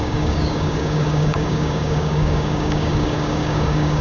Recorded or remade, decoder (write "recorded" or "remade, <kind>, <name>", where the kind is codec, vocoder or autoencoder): remade, codec, DAC